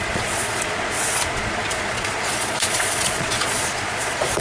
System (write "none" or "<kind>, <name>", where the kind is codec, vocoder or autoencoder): vocoder, Vocos